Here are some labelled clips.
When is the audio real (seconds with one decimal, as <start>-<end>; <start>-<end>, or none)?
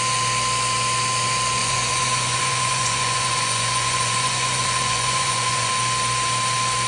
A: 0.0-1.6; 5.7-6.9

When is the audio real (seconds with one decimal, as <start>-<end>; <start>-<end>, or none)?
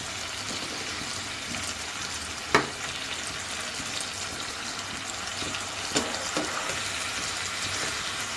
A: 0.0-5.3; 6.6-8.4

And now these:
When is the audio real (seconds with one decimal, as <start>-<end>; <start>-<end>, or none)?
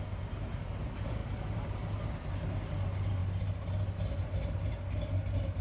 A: 0.0-5.6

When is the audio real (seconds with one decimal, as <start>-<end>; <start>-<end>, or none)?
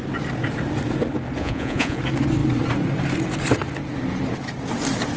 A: 0.0-1.4; 2.0-5.2